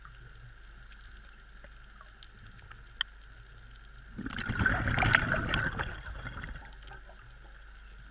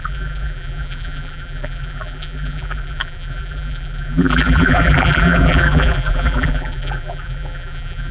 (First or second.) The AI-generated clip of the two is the second